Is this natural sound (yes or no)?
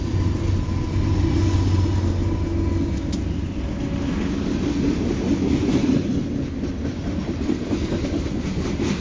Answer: yes